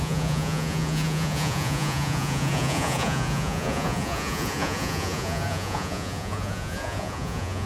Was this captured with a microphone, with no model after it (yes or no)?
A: no